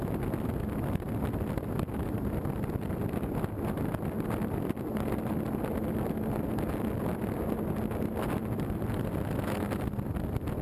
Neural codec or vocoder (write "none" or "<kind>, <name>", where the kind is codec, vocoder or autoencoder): none